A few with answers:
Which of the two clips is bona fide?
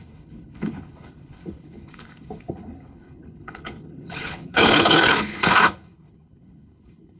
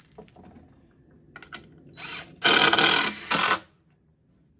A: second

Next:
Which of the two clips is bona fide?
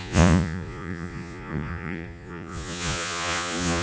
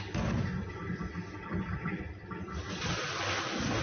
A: second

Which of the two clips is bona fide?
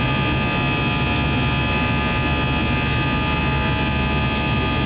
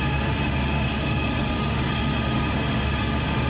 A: first